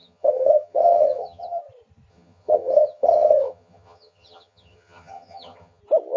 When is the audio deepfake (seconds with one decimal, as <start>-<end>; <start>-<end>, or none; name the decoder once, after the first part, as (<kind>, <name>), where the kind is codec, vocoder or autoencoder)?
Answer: 0.0-1.6 (vocoder, HiFi-GAN); 2.1-5.8